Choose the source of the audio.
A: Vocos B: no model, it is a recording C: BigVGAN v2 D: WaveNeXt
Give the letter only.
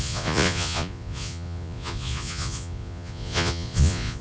A